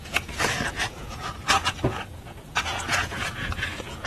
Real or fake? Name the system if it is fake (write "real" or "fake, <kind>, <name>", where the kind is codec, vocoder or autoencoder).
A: fake, vocoder, Vocos